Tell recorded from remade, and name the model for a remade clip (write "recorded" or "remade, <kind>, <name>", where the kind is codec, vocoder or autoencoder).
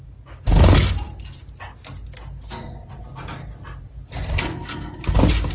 recorded